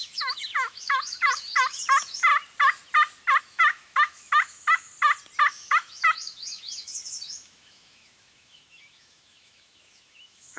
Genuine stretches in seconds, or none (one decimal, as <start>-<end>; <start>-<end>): 2.3-3.4; 4.9-5.5